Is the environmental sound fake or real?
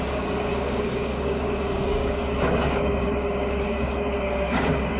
fake